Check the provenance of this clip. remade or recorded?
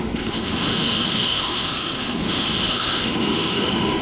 remade